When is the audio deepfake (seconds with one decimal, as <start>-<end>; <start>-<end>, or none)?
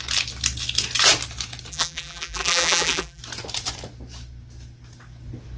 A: 1.7-3.2